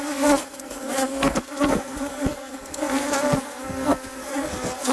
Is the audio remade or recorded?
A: remade